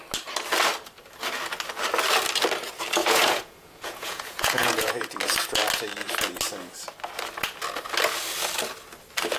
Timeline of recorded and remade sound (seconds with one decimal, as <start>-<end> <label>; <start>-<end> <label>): 0.0-3.0 recorded; 3.0-5.1 remade; 5.1-9.4 recorded